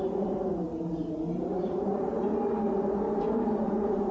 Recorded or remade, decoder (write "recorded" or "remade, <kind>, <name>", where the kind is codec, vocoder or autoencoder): remade, vocoder, BigVGAN v2